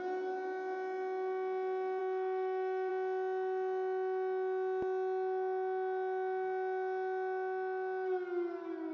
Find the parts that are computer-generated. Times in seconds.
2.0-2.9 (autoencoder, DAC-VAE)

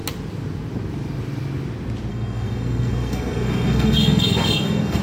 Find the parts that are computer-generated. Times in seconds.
2.1-5.0 (codec, SNAC)

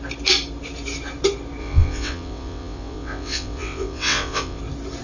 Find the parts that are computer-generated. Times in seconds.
1.6-4.6 (vocoder, WaveNeXt)

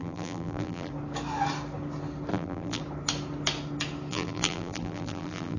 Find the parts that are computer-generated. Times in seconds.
0.0-0.9 (vocoder, BigVGAN v2); 2.3-2.8; 4.1-5.6

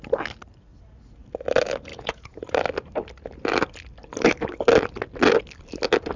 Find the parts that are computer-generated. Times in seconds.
1.9-2.4 (vocoder, Vocos)

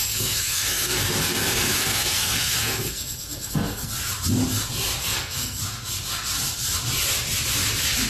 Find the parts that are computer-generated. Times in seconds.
0.0-3.9 (codec, SNAC); 5.0-5.6

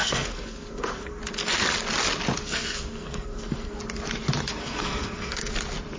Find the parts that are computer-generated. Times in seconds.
0.0-1.2 (codec, SNAC); 2.4-3.8; 4.6-5.5

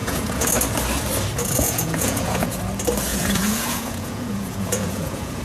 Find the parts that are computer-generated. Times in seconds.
0.0-0.5 (vocoder, Vocos); 1.4-2.6; 3.1-5.4